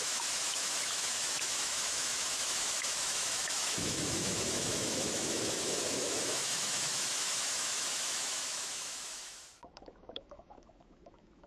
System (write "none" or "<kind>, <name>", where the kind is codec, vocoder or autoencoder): autoencoder, DAC-VAE